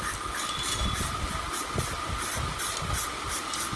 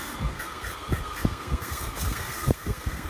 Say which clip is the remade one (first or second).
second